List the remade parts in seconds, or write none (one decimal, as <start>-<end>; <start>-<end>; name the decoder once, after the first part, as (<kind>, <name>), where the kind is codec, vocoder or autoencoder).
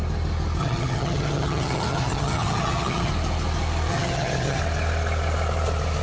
0.6-3.1 (vocoder, HiFi-GAN); 3.9-4.6